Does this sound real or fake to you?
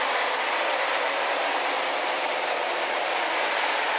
real